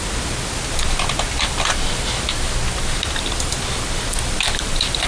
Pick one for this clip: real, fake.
fake